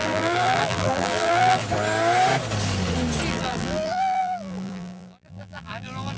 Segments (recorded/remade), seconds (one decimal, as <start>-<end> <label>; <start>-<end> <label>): 0.0-1.6 remade; 1.6-3.3 recorded; 3.3-6.2 remade